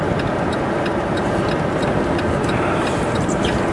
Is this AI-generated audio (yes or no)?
no